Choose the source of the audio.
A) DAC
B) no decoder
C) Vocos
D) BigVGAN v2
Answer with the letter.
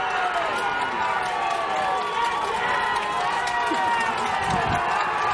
B